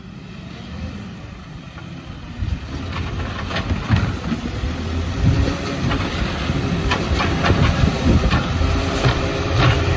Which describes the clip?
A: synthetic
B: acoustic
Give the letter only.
A